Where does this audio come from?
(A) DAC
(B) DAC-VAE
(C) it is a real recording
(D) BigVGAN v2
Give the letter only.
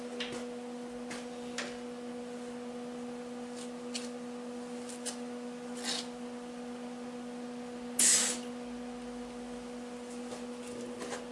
C